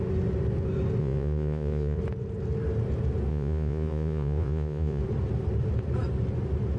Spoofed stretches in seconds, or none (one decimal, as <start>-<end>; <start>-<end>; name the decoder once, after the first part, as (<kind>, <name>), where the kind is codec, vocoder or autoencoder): 1.0-2.0 (vocoder, Vocos); 3.3-5.0